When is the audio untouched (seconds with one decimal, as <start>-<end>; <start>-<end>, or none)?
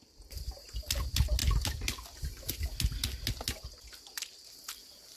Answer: 0.0-5.2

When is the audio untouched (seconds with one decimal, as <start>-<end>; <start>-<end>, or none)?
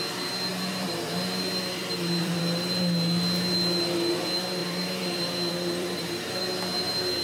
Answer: 0.0-0.5; 2.4-4.6; 6.4-7.2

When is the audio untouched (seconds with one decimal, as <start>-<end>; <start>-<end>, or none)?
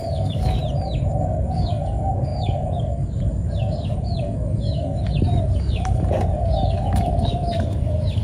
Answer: 0.6-1.2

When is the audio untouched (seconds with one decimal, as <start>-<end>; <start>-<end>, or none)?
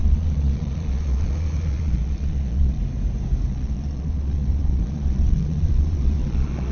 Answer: 2.8-3.5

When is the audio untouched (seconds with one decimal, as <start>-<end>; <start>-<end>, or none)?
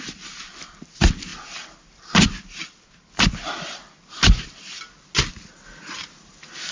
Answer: 0.0-6.7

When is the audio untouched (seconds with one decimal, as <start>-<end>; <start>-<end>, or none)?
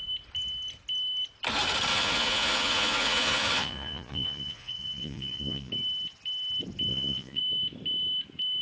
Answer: 0.0-1.9; 5.7-6.9; 7.4-8.6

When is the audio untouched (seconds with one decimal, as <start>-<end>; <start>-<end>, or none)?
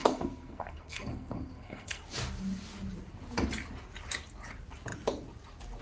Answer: 2.0-5.8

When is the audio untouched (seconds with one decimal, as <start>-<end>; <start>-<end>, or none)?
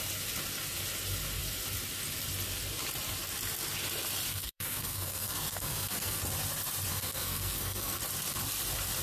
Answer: 0.0-4.3; 6.2-6.9; 8.0-9.0